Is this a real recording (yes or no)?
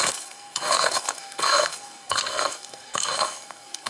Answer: no